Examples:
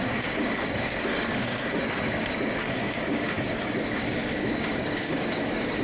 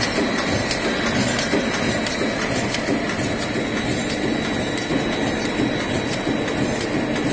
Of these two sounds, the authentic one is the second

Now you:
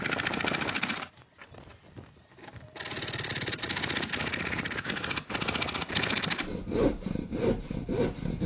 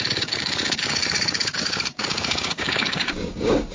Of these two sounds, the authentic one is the first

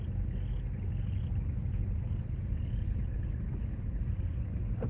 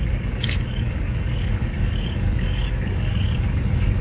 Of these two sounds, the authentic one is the first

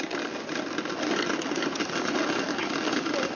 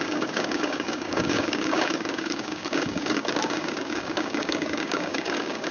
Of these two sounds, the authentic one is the first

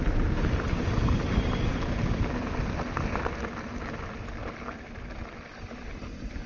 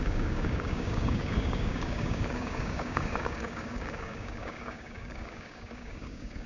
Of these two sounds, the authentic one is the first